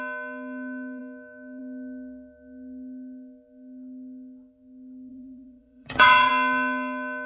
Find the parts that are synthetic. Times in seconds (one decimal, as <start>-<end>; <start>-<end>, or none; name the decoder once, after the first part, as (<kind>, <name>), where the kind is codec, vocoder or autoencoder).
5.1-6.3 (vocoder, Vocos)